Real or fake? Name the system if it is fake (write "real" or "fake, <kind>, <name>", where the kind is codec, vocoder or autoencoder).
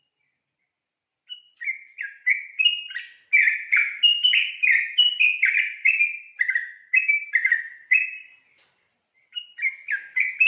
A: real